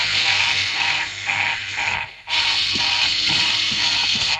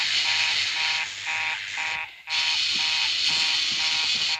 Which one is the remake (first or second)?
first